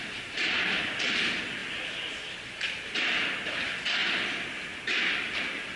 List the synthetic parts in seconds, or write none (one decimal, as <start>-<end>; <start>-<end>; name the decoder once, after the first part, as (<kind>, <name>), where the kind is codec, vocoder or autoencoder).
none